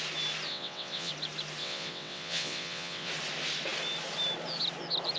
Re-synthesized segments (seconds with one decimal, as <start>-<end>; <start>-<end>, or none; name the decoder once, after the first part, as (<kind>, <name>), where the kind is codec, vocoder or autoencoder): 0.5-1.1 (vocoder, WaveNeXt); 1.6-3.1